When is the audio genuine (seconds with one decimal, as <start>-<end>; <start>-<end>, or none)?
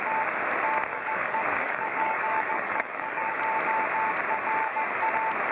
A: 0.0-0.9; 3.3-4.6; 5.1-5.5